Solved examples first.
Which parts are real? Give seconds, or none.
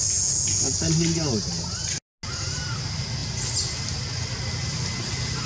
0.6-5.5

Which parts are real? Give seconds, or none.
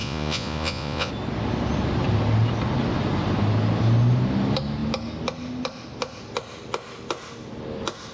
1.1-8.1